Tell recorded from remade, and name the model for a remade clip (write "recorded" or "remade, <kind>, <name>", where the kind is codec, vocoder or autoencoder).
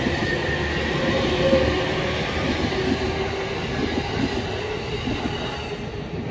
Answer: recorded